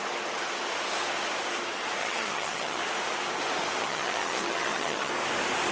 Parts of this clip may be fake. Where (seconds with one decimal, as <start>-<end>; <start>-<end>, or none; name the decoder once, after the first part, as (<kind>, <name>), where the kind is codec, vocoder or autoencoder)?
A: 2.0-2.8 (vocoder, HiFi-GAN); 3.8-5.1